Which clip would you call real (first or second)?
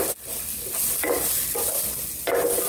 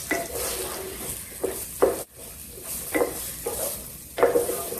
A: first